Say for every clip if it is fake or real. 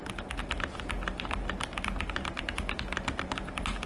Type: real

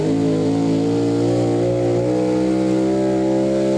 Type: real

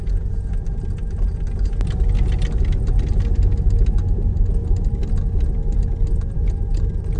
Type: real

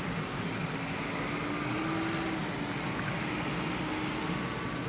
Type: real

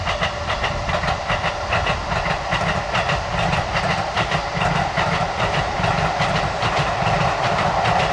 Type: real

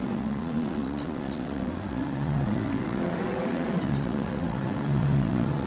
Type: fake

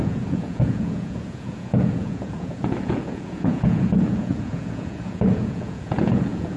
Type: fake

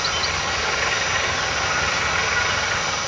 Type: real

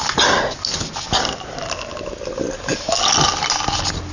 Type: real